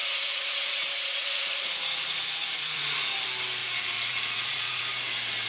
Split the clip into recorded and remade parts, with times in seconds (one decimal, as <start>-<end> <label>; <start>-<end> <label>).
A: 0.0-3.1 remade; 3.1-3.6 recorded; 3.6-4.8 remade; 4.8-5.5 recorded